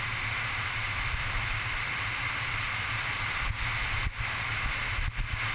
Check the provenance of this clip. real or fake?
real